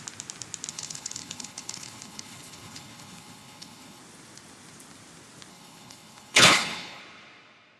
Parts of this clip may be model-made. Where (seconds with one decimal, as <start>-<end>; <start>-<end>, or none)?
0.7-4.0; 5.5-7.0